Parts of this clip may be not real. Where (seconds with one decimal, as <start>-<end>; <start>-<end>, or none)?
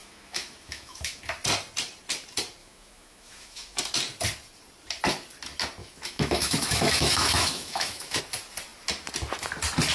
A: 0.0-1.2; 2.6-3.8; 5.8-8.2